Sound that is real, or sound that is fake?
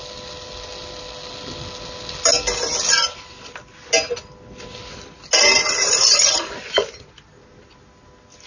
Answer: real